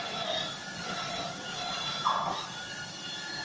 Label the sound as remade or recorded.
recorded